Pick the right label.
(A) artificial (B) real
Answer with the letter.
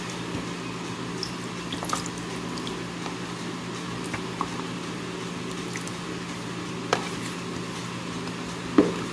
B